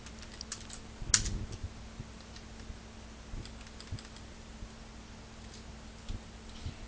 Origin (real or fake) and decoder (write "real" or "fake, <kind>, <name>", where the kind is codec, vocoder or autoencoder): real